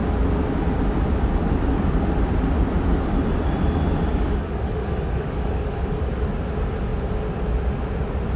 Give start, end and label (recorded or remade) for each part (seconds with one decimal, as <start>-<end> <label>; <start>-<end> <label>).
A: 0.0-4.1 recorded; 4.1-6.1 remade; 6.1-8.4 recorded